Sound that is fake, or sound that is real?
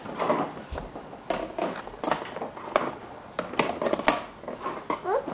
real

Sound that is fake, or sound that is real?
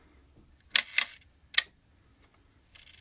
real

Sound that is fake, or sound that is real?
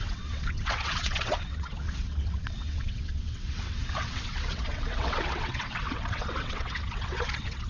fake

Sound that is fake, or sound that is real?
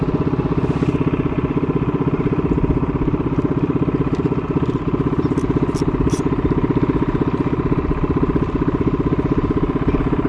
real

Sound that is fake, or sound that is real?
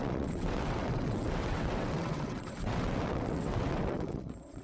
fake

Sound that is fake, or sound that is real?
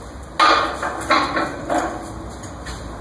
real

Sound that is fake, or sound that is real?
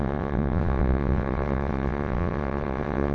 fake